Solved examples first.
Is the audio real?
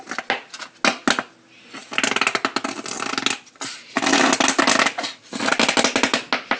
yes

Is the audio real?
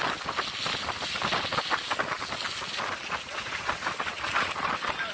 yes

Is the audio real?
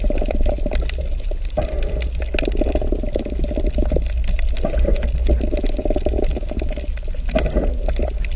yes